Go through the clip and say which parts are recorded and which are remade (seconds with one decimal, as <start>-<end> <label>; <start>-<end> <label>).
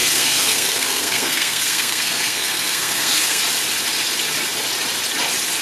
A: 0.0-3.4 remade; 3.4-5.6 recorded